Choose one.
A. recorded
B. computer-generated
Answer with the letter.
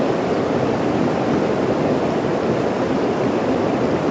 A